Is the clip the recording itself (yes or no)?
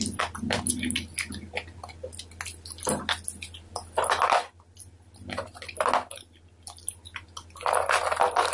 yes